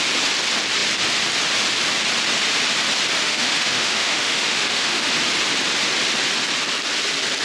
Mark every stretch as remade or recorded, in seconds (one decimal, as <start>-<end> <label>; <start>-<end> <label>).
0.0-3.2 recorded; 3.2-5.1 remade; 5.1-7.4 recorded